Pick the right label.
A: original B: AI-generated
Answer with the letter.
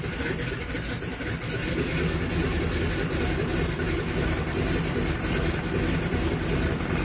A